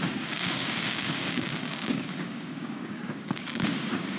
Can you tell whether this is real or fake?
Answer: fake